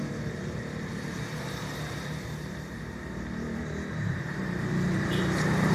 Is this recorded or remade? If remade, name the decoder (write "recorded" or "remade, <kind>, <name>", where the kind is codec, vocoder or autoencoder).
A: remade, vocoder, BigVGAN v2